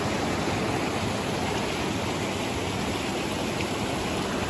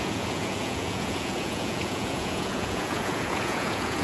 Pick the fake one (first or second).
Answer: second